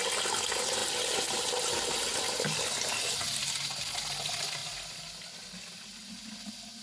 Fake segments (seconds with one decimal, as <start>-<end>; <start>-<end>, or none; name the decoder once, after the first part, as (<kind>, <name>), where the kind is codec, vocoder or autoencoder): 0.8-2.6 (vocoder, BigVGAN v2)